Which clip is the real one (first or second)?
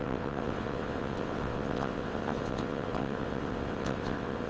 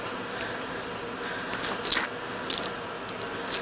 second